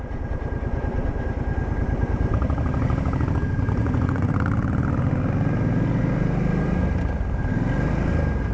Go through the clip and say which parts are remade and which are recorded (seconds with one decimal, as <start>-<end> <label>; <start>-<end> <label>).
0.0-3.8 recorded; 3.8-4.3 remade; 4.3-8.5 recorded